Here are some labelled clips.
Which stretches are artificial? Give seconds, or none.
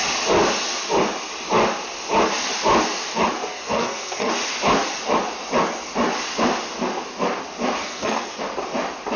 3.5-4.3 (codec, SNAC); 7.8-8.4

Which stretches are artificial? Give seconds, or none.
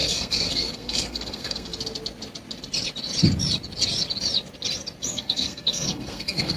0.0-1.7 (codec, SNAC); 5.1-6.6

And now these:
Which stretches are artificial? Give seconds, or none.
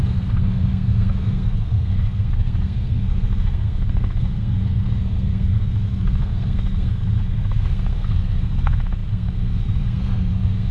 0.0-10.7 (codec, SNAC)